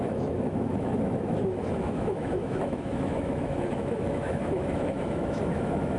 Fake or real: fake